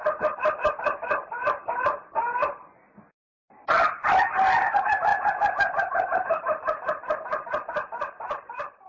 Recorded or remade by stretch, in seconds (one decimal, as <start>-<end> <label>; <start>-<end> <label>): 0.0-8.9 recorded